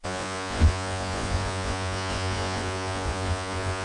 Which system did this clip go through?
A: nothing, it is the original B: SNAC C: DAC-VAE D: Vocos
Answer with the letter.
D